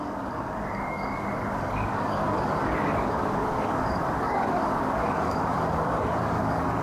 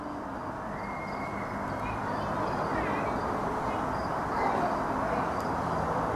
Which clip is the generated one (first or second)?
first